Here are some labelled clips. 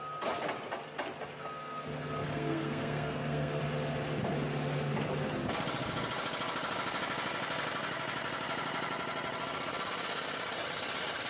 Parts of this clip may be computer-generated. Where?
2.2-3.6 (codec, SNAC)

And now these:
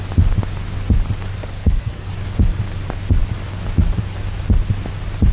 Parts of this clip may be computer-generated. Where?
1.4-2.1 (codec, SNAC)

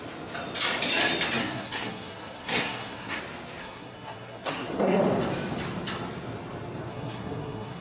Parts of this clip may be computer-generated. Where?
1.4-3.2 (codec, SNAC); 3.6-5.0; 6.9-7.8

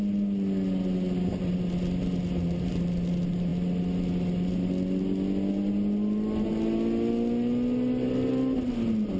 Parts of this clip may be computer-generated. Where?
none

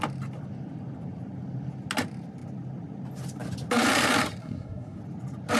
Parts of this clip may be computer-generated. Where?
4.4-5.0 (codec, SNAC)

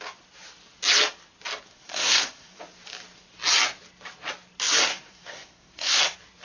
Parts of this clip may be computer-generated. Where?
1.7-2.6 (codec, SNAC); 4.9-6.0